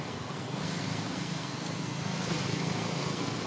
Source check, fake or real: fake